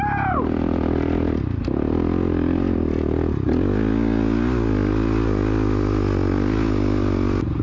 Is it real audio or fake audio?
real